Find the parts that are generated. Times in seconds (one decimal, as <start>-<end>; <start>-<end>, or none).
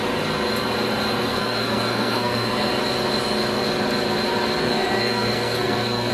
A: 1.3-2.7; 4.6-6.1